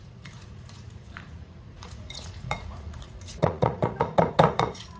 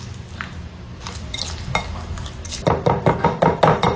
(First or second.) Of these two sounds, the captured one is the second